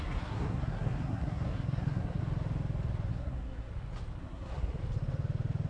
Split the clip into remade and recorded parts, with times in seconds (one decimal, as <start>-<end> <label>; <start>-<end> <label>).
0.0-2.2 remade; 2.2-3.1 recorded; 3.1-3.7 remade; 3.7-4.2 recorded; 4.2-4.8 remade; 4.8-5.7 recorded